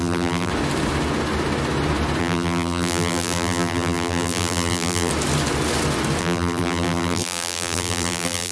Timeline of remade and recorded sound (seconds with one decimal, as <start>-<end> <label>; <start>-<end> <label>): 0.0-0.5 remade; 0.5-2.2 recorded; 2.2-5.1 remade; 5.1-6.2 recorded; 6.2-8.5 remade